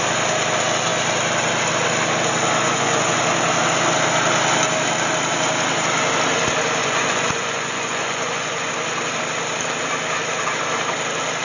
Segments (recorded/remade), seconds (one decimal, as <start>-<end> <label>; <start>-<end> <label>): 0.0-2.6 recorded; 2.6-3.2 remade; 3.2-6.8 recorded; 6.8-8.7 remade; 8.7-11.4 recorded